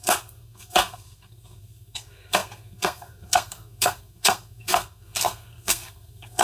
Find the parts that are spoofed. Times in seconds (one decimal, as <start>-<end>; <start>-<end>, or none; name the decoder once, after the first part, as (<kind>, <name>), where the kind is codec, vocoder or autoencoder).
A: 0.0-6.4 (codec, SNAC)